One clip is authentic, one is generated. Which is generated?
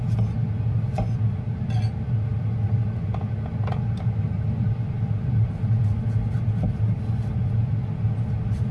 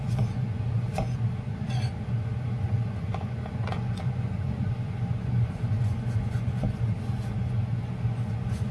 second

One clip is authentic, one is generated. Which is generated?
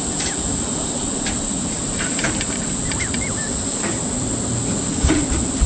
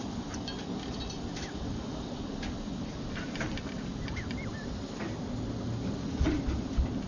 first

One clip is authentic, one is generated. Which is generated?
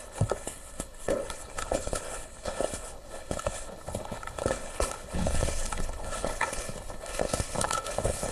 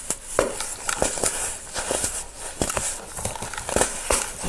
first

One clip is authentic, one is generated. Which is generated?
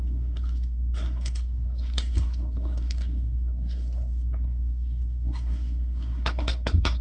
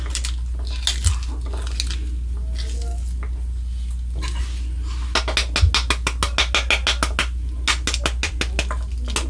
first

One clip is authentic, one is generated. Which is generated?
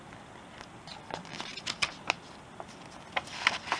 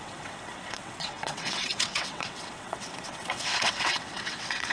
second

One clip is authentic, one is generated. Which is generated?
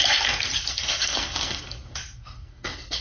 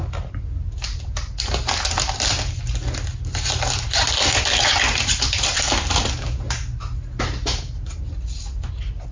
first